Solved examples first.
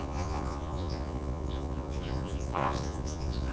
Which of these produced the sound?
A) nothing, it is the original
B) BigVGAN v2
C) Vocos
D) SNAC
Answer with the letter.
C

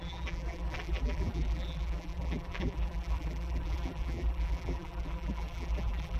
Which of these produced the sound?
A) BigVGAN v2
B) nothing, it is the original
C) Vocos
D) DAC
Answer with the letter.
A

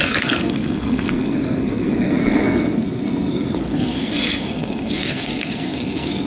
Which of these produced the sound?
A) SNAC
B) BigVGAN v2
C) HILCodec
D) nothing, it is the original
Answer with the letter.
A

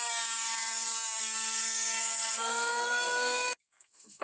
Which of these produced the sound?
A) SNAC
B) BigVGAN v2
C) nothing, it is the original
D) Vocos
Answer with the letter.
A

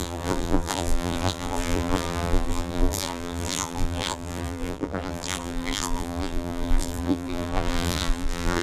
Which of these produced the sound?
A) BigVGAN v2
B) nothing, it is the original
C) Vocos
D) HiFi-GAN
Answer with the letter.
A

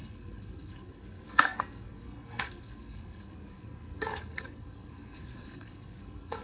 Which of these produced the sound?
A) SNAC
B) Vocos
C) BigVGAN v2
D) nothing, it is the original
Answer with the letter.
A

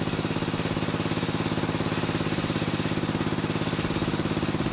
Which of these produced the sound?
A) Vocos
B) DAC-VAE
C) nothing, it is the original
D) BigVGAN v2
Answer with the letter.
C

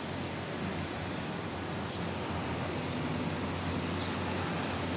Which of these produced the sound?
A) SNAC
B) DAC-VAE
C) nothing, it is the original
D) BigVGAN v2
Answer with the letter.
C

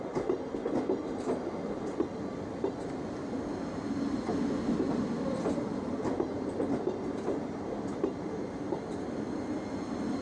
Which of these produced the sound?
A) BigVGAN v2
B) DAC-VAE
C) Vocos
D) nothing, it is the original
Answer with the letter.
D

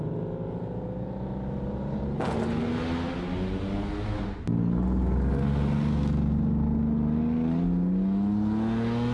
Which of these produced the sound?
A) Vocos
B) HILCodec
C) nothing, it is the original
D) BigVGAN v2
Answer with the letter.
C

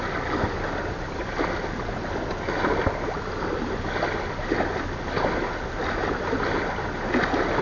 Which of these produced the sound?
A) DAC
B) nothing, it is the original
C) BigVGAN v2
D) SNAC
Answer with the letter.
B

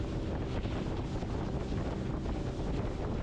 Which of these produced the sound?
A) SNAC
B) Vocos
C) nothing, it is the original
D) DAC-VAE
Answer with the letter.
C